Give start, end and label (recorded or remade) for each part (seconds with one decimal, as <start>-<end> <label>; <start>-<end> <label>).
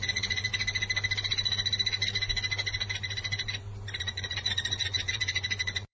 0.0-0.5 remade; 0.5-4.0 recorded; 4.0-5.9 remade